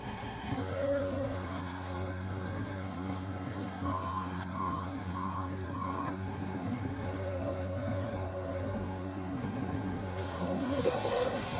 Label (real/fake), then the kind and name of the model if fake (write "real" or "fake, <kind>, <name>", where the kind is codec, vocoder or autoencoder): fake, codec, SNAC